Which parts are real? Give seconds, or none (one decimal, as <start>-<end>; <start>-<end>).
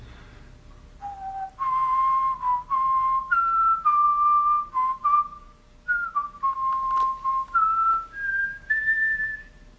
0.0-9.8